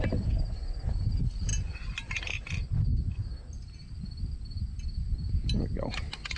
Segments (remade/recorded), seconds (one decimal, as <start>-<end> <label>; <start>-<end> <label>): 0.0-1.5 recorded; 1.5-5.3 remade; 5.3-6.4 recorded